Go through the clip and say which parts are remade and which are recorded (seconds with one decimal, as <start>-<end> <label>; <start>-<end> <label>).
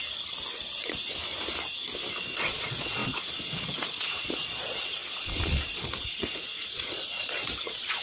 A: 0.0-2.4 recorded; 2.4-8.0 remade